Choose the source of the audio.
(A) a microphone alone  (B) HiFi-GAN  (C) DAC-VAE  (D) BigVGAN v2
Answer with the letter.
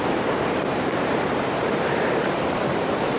D